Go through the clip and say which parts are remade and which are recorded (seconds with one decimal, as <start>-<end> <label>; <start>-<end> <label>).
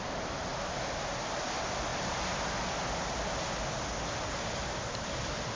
0.0-5.6 recorded